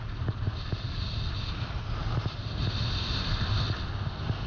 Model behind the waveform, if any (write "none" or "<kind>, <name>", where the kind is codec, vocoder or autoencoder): none